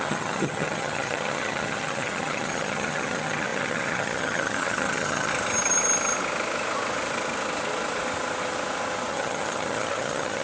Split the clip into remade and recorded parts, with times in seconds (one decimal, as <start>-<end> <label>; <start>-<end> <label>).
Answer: 0.0-5.3 remade; 5.3-9.1 recorded; 9.1-10.4 remade